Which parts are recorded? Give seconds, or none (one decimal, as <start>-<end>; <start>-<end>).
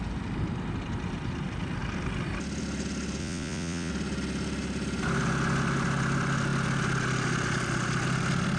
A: 0.0-3.2; 3.9-8.6